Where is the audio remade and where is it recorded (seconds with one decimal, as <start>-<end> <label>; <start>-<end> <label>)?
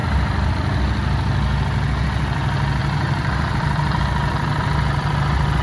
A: 0.0-0.5 remade; 0.5-2.8 recorded; 2.8-4.0 remade; 4.0-5.6 recorded